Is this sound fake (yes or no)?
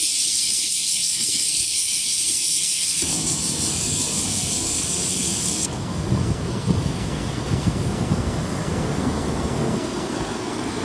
yes